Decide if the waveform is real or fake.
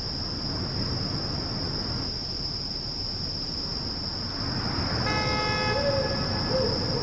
real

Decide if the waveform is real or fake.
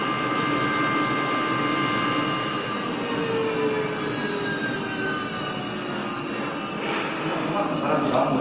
real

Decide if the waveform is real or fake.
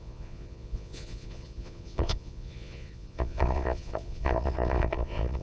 fake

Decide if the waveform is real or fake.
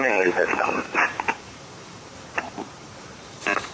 fake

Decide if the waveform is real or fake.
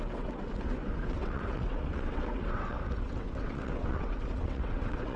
fake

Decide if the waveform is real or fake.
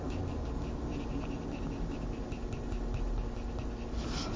real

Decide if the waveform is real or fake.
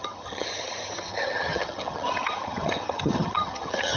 fake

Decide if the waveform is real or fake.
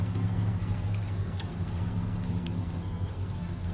fake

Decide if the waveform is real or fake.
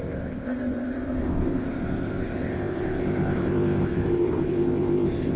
fake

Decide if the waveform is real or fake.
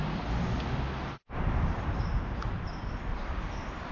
real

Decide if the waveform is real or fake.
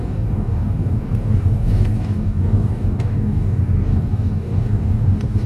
fake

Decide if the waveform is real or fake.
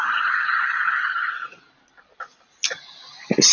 real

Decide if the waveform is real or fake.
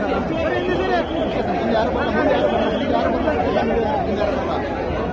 real